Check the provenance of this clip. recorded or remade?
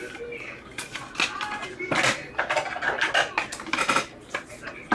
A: recorded